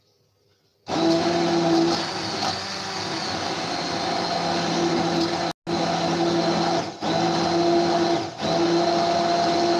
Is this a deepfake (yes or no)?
no